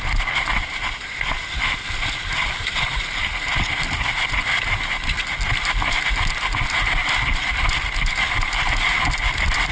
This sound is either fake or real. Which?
real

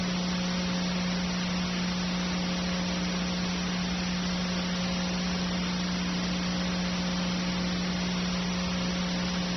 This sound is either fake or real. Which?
real